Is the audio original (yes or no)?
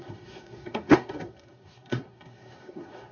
no